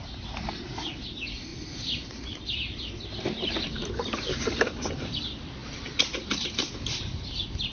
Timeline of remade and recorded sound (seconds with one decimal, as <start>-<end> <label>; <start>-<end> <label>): 0.0-7.7 recorded